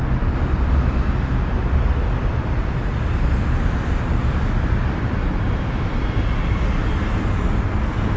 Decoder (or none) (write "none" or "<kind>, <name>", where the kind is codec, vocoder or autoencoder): none